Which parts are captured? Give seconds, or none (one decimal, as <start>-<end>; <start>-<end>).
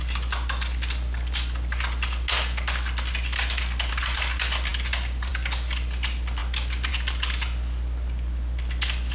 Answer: 0.0-9.1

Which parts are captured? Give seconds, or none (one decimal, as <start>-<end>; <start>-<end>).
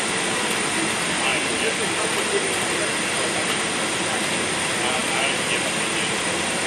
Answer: 0.0-6.7